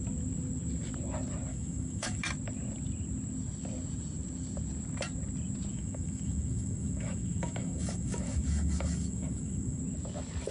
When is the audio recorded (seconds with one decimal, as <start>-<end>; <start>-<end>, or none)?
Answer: 0.0-1.5; 2.2-5.7; 9.8-10.5